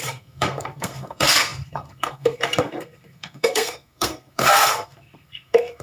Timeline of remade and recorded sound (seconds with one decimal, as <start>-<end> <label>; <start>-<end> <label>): 0.0-5.8 remade